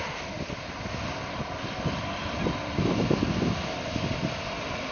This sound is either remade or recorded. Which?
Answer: recorded